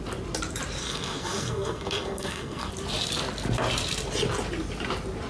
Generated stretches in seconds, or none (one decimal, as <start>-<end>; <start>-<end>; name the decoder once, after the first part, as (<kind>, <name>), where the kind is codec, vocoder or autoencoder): 0.8-2.7 (codec, SNAC)